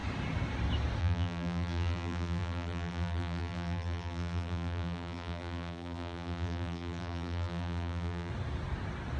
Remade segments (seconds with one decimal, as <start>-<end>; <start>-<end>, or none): 1.0-8.3